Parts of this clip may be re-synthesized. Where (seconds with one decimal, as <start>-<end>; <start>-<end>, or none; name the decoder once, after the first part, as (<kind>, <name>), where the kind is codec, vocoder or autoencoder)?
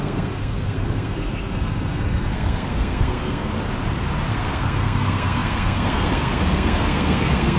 0.0-3.5 (codec, SNAC); 4.3-7.6